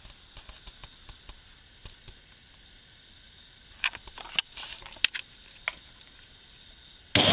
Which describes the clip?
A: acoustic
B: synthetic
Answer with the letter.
A